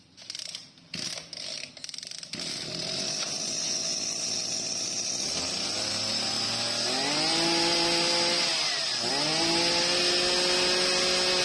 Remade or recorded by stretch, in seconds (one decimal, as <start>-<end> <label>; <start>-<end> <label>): 0.0-11.4 recorded